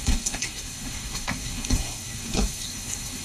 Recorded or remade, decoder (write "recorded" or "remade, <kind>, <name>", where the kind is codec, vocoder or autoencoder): remade, codec, SNAC